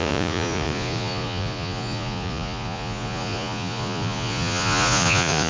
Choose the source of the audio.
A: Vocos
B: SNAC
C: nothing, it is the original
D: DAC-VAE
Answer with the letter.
A